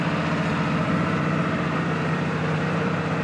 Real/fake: fake